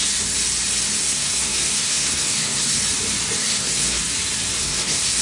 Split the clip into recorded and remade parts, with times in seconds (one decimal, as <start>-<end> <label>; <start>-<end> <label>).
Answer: 0.0-1.0 recorded; 1.0-2.8 remade; 2.8-3.4 recorded; 3.4-4.0 remade; 4.0-4.6 recorded; 4.6-5.2 remade